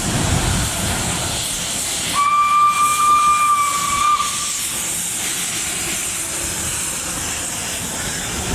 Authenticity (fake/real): real